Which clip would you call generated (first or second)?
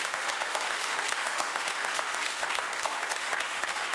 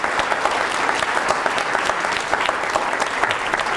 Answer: first